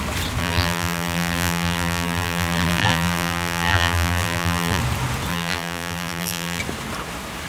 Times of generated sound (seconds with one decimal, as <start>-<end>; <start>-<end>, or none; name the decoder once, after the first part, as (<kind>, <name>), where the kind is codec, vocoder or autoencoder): 0.4-4.8 (vocoder, BigVGAN v2); 5.3-6.6